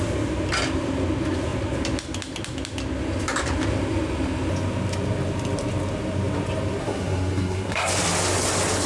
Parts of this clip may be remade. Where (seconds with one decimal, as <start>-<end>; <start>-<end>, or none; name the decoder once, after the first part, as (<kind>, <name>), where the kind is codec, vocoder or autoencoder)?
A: 6.8-7.9 (codec, SNAC)